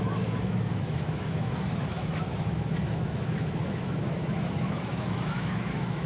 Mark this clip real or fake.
fake